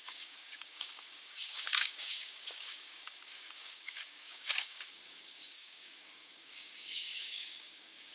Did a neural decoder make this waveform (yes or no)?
yes